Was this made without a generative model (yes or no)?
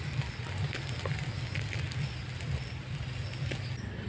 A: yes